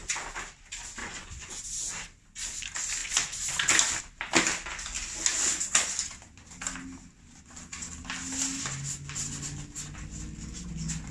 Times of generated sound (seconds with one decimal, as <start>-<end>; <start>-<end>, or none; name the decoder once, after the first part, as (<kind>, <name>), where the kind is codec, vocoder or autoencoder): 1.0-1.5 (vocoder, Vocos)